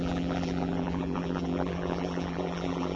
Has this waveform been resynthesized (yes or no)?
yes